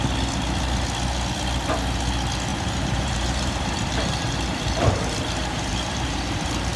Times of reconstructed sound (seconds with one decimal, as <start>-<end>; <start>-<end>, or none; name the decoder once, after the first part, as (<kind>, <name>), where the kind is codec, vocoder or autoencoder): 2.5-6.8 (vocoder, BigVGAN v2)